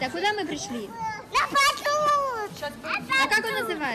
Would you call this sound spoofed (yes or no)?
no